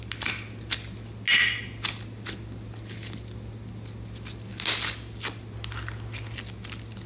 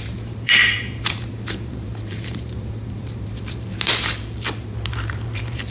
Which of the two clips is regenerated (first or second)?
second